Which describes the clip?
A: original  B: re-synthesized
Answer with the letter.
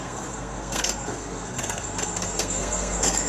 B